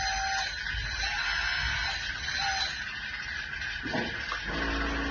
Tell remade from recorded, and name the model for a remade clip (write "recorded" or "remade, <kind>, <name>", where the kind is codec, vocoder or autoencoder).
recorded